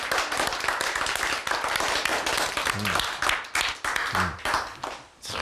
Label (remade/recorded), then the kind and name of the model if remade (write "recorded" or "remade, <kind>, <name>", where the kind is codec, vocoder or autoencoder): recorded